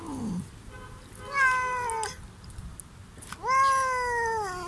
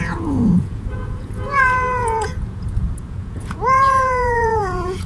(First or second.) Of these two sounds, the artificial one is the second